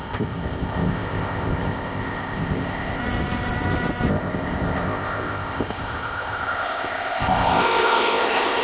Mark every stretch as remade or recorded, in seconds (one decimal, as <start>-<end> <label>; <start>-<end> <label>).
0.0-3.0 remade; 3.0-4.1 recorded; 4.1-8.6 remade